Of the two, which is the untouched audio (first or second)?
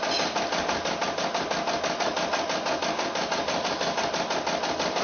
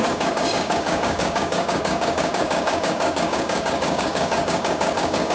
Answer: first